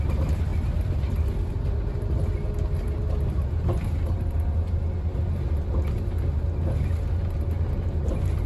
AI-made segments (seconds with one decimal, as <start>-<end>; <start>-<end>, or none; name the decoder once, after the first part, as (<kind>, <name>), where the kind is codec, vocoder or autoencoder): none